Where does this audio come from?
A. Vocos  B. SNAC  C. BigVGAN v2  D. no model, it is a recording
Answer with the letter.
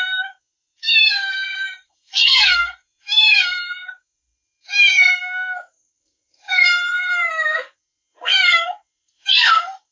B